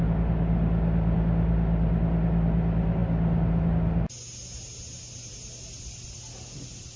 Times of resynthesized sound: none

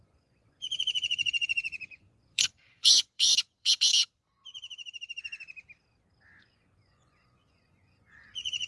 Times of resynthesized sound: 0.0-3.9 (vocoder, Vocos); 6.4-8.7

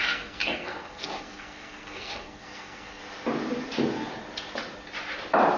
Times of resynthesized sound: 0.0-3.0 (codec, SNAC)

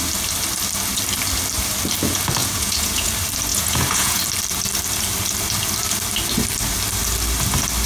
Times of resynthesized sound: 2.4-3.1 (vocoder, Vocos); 3.5-4.2

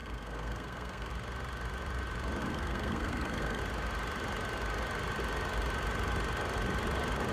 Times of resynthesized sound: 0.0-1.1 (codec, SNAC); 2.4-3.6

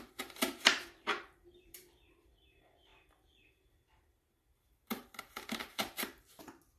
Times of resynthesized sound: 0.0-2.9 (vocoder, BigVGAN v2); 5.2-6.8

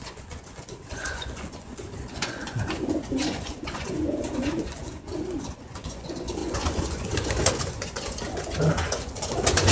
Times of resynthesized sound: 0.0-9.7 (vocoder, Vocos)

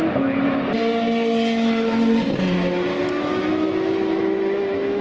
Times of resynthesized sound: 3.0-5.0 (autoencoder, DAC-VAE)